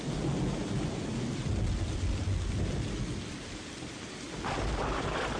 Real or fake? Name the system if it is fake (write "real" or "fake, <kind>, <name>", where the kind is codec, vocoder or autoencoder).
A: real